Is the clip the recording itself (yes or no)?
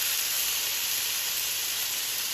yes